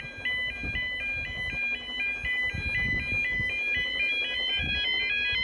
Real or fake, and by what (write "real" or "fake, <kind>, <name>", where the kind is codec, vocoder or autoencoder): real